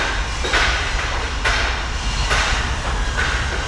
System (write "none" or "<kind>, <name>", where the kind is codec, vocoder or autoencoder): none